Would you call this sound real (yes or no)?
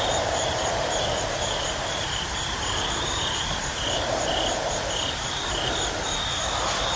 no